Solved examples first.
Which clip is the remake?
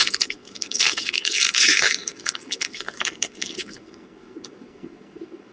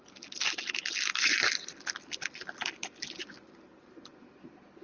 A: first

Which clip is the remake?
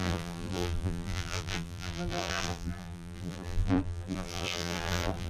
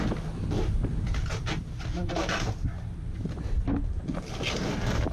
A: first